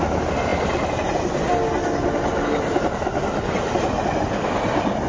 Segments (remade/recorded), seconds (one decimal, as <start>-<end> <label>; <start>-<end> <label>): 0.0-5.1 recorded